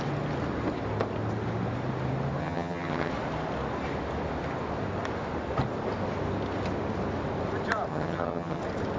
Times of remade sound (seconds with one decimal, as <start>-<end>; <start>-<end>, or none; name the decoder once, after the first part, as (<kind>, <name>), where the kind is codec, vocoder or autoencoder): 2.4-3.1 (vocoder, HiFi-GAN); 7.9-8.6